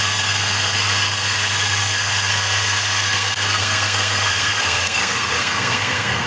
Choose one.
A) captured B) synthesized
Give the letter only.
B